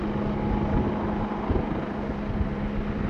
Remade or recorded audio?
recorded